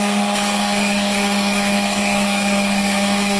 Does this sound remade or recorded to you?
remade